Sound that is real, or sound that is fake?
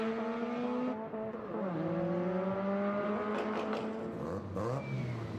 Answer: real